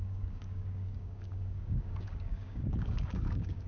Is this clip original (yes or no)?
no